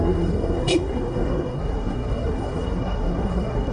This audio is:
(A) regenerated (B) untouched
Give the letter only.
A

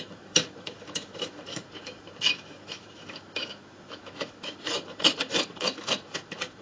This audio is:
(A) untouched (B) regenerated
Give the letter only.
B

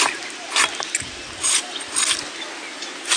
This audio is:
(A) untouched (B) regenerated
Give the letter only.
A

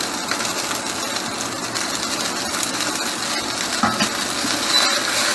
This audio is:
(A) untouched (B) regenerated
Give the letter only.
A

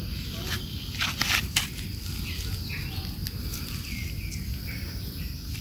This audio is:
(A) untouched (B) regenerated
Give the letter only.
A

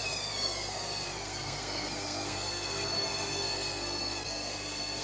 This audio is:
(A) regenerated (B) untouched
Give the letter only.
A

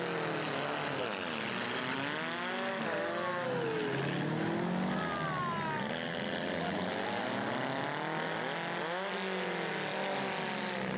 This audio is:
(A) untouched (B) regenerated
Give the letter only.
A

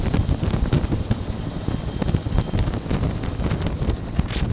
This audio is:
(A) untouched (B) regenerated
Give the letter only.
A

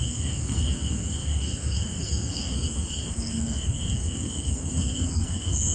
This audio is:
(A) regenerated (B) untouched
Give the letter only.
A